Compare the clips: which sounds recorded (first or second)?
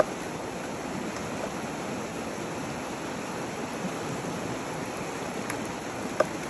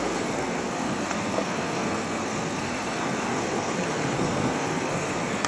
first